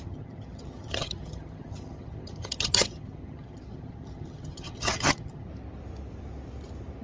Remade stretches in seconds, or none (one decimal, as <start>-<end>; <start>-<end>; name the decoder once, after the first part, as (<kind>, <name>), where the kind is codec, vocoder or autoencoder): 0.0-5.5 (vocoder, HiFi-GAN)